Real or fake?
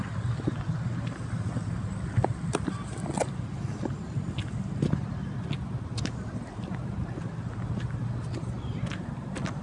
real